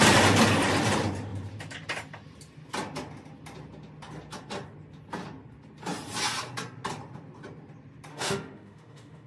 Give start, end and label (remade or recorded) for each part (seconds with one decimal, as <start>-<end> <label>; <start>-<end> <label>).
0.0-8.1 recorded; 8.1-9.3 remade